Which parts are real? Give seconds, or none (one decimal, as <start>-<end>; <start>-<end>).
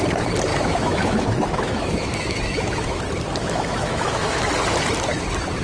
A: 0.0-0.5; 3.0-3.4; 4.4-5.6